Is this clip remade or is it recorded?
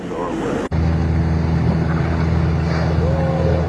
recorded